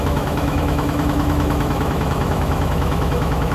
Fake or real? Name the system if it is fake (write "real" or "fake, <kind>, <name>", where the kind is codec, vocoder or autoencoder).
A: fake, autoencoder, DAC-VAE